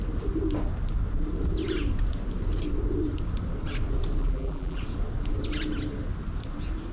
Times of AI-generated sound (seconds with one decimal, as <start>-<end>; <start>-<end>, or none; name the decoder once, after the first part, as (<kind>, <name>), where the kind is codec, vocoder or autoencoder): 4.2-4.8 (vocoder, BigVGAN v2)